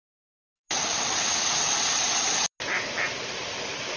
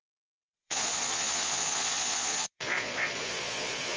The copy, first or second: second